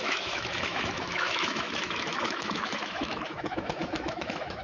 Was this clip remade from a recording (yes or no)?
yes